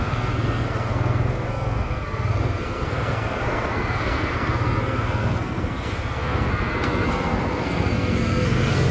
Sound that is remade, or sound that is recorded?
remade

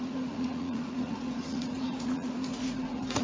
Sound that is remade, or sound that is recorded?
remade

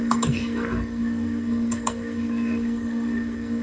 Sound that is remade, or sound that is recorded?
remade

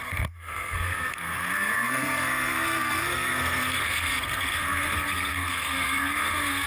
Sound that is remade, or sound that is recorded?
remade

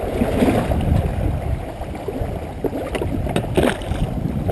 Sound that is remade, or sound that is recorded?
recorded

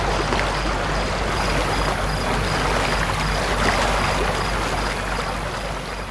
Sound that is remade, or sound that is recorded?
recorded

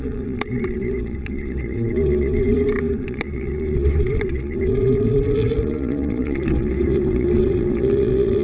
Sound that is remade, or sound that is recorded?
remade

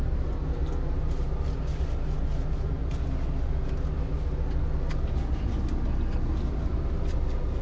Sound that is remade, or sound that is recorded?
recorded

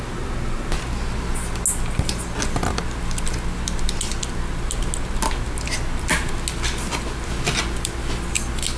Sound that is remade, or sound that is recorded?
recorded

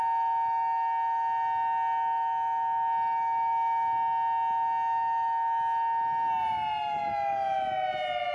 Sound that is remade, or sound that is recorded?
recorded